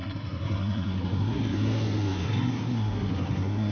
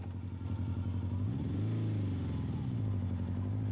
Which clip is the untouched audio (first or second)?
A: second